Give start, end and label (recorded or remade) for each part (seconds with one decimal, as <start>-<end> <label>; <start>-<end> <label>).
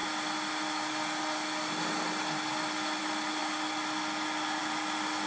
0.0-5.3 recorded